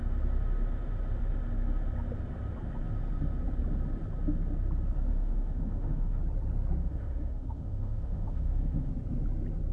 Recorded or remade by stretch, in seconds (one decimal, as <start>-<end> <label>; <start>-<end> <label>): 0.0-5.1 recorded; 5.1-6.2 remade; 6.2-6.8 recorded; 6.8-8.9 remade; 8.9-9.7 recorded